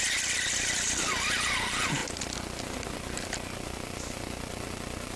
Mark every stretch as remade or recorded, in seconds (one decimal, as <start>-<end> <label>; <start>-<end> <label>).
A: 0.0-5.2 recorded